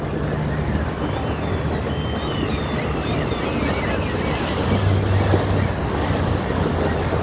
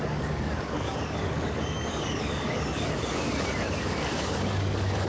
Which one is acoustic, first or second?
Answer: first